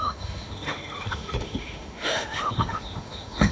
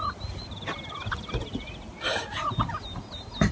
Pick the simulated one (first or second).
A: first